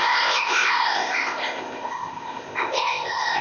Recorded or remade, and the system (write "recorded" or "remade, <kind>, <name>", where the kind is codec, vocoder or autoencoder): remade, codec, ZipCodec